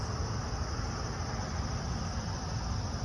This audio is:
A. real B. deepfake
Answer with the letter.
A